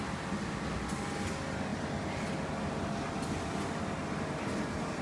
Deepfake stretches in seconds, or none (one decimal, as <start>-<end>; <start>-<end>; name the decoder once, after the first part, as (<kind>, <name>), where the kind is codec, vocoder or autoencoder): none